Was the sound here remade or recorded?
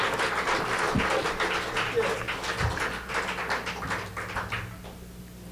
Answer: recorded